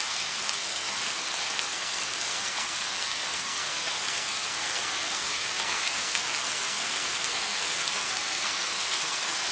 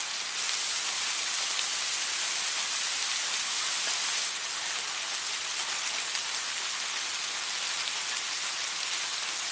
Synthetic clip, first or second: first